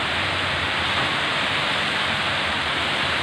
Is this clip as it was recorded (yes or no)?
no